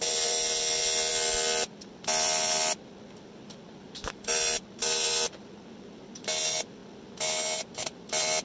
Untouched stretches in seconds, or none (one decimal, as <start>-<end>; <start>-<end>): 0.0-8.4